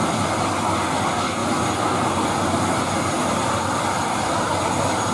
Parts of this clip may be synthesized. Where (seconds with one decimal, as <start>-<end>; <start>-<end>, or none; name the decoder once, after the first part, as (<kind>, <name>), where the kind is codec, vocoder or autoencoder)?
none

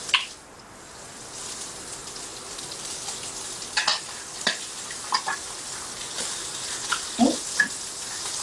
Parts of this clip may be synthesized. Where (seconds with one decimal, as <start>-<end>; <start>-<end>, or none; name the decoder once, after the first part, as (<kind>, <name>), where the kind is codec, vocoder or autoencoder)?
2.3-3.1 (vocoder, BigVGAN v2); 3.9-5.8

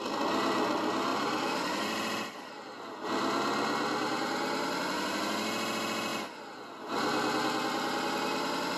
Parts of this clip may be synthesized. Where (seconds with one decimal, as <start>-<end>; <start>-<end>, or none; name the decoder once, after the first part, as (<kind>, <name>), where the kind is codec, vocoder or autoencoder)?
1.1-2.5 (vocoder, BigVGAN v2)

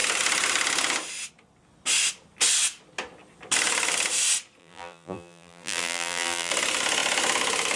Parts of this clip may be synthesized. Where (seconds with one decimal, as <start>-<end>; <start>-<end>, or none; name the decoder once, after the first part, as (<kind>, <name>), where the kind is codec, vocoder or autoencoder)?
4.6-6.5 (vocoder, BigVGAN v2)

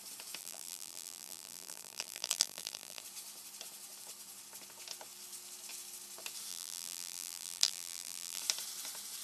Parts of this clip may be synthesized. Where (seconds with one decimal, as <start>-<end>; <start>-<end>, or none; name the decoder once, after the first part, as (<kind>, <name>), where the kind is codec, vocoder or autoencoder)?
0.4-3.0 (vocoder, BigVGAN v2); 6.5-8.4

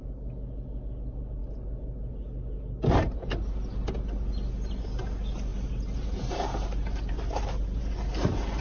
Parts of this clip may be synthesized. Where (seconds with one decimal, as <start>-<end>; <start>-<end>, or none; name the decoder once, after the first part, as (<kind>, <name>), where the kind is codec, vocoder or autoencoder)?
5.5-7.8 (vocoder, BigVGAN v2)